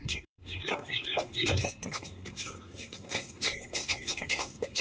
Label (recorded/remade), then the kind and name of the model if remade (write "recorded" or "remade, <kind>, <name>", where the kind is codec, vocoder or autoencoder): remade, codec, SNAC